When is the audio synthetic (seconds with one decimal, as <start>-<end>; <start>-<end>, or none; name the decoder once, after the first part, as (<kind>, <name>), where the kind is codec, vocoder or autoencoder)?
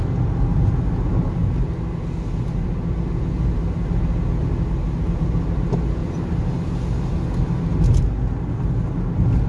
none